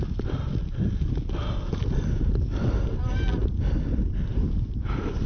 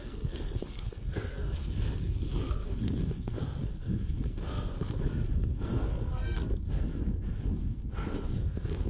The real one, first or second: first